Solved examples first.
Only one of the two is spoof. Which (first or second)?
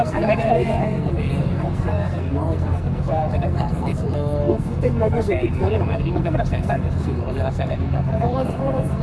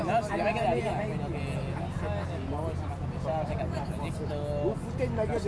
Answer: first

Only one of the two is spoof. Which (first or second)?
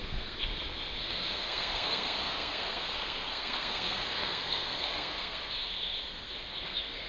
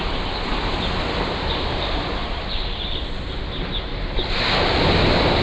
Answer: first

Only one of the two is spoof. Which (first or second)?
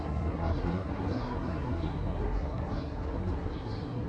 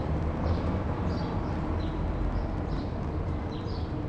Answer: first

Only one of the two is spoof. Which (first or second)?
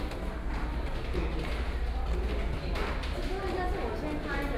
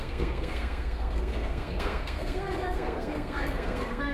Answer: second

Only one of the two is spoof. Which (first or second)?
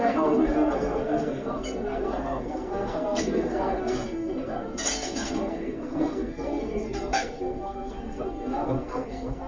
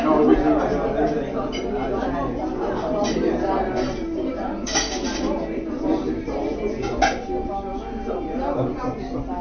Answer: first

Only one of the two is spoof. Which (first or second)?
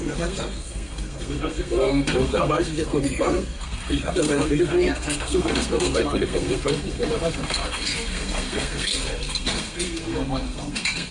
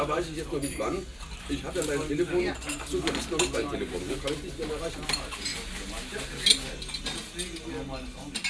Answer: first